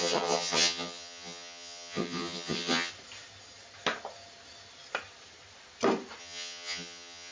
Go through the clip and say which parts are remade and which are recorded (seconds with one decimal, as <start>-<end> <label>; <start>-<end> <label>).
0.0-2.9 remade; 2.9-6.2 recorded; 6.2-7.3 remade